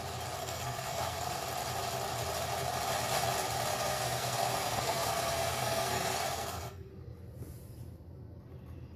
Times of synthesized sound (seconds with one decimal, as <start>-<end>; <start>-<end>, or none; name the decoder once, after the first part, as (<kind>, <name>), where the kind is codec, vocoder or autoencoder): 0.4-1.4 (codec, SNAC); 3.7-6.9